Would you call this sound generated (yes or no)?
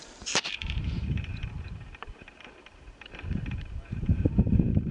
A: yes